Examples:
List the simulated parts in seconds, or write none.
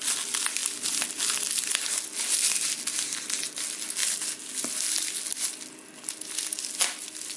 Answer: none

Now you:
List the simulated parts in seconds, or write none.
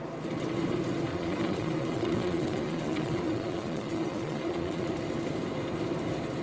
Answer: 1.1-4.9 (vocoder, Vocos)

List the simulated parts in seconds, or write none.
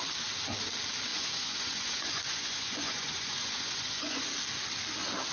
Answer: 1.1-4.3 (vocoder, Vocos)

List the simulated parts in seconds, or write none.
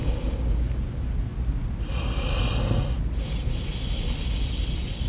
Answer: none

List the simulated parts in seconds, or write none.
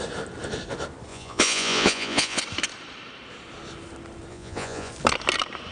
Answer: 1.1-2.4 (vocoder, Vocos); 4.3-4.9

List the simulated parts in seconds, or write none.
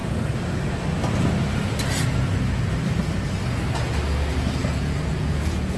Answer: 4.6-5.8 (vocoder, Vocos)